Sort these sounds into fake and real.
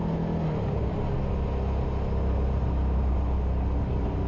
real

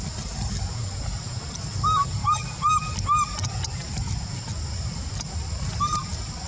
real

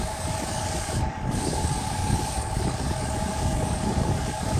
fake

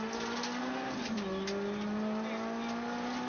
real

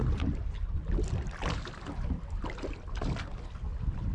real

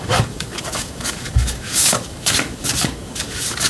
fake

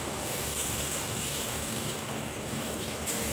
fake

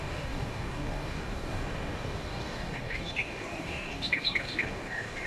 fake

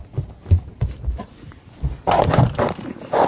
real